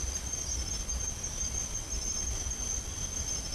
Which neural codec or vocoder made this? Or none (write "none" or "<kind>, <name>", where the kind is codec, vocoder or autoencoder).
none